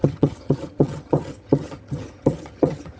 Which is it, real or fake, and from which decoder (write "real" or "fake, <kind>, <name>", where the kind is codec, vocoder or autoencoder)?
fake, vocoder, HiFi-GAN